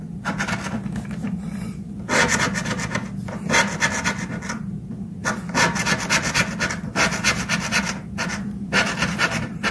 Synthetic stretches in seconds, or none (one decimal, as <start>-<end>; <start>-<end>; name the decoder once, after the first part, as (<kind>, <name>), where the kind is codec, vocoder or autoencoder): 8.3-9.7 (vocoder, BigVGAN v2)